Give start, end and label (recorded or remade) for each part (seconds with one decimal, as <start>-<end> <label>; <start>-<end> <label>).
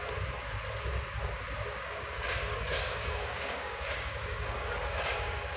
0.0-1.8 recorded; 1.8-5.6 remade